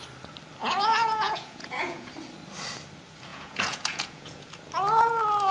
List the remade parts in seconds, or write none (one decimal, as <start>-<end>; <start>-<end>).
0.6-2.1; 3.3-4.5